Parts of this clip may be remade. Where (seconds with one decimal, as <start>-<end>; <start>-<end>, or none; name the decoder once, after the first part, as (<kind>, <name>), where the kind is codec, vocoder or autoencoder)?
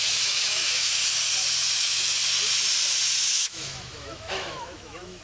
0.0-1.0 (autoencoder, DAC-VAE); 1.8-2.2; 3.3-5.2